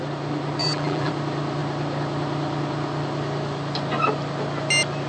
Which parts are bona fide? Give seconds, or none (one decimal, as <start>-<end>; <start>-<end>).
0.0-0.6; 1.1-5.1